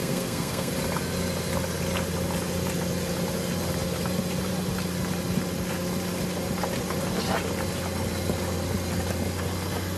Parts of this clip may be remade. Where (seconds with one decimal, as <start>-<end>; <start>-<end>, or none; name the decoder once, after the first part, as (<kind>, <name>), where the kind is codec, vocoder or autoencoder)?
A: 0.0-0.7 (codec, SNAC)